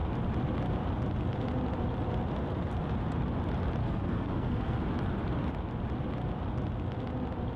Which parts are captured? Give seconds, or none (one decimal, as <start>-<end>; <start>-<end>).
0.0-3.8; 4.8-7.6